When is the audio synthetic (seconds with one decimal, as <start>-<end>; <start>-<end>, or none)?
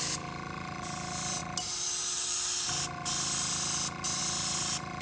0.0-1.4; 4.2-5.0